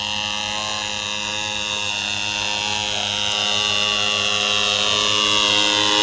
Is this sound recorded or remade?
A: recorded